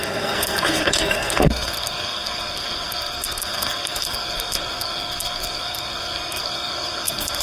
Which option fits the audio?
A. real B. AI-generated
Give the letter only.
B